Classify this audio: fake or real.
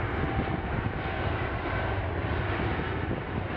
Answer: real